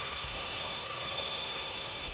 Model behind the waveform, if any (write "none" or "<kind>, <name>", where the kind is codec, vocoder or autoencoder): codec, SNAC